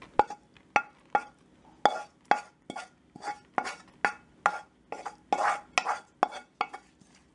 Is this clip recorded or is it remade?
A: recorded